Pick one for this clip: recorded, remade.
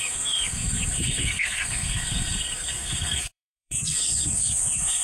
remade